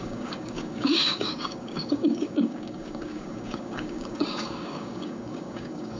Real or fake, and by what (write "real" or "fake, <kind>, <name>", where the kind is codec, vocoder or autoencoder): fake, codec, DAC